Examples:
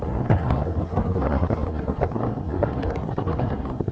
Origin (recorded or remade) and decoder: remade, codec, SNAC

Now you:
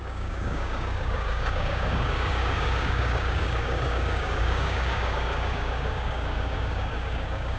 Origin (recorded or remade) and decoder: remade, codec, DAC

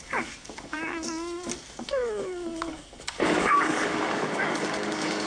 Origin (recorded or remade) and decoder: remade, codec, DAC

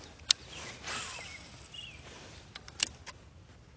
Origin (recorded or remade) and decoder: recorded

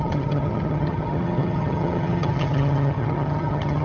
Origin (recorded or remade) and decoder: remade, vocoder, HiFi-GAN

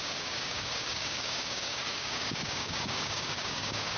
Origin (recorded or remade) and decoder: remade, codec, DAC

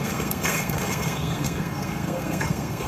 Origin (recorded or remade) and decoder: remade, codec, SNAC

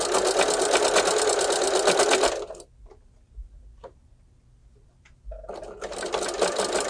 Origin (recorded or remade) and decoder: recorded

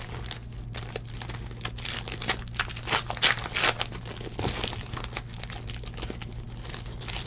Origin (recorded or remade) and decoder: recorded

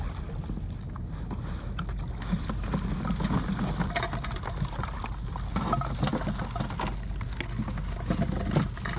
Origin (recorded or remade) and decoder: recorded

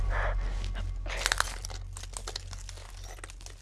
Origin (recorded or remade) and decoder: recorded